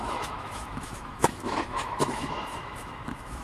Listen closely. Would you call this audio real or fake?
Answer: fake